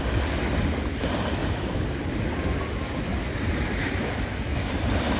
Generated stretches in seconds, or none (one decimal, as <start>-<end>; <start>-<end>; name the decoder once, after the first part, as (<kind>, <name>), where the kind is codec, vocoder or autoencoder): 3.8-4.7 (autoencoder, DAC-VAE)